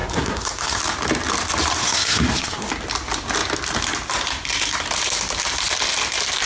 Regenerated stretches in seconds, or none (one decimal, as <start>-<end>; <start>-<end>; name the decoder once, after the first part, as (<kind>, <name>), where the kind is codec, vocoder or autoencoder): 0.0-0.8 (codec, SNAC); 1.8-2.7